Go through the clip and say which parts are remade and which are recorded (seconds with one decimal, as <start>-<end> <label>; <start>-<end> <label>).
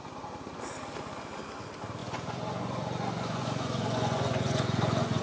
0.0-2.0 recorded; 2.0-5.2 remade